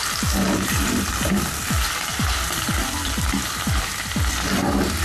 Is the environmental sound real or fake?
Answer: real